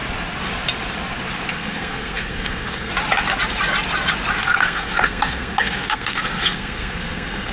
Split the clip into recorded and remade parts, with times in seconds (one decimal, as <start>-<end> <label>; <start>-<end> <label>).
0.0-1.5 recorded; 1.5-2.9 remade; 2.9-4.4 recorded; 4.4-7.5 remade